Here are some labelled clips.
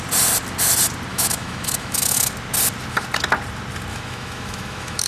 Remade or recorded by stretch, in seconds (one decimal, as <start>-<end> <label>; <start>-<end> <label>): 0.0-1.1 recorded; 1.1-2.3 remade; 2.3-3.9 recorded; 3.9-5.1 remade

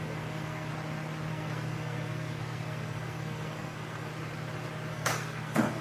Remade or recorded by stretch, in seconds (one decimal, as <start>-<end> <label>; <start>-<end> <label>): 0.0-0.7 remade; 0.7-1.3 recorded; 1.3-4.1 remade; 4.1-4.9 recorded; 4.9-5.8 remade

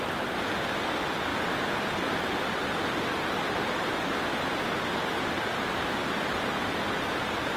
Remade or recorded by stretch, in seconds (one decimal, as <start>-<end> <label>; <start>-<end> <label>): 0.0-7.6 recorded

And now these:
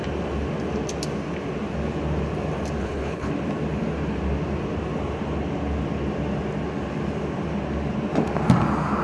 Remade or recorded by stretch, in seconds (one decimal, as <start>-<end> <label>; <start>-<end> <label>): 0.0-2.8 recorded; 2.8-3.3 remade; 3.3-9.0 recorded

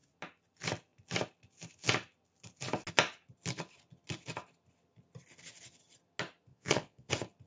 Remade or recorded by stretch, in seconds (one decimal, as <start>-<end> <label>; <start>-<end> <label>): 0.0-6.5 recorded; 6.5-7.1 remade; 7.1-7.5 recorded